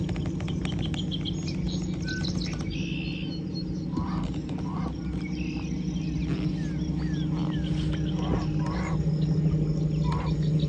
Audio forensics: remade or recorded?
recorded